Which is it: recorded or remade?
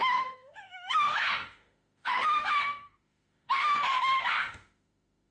remade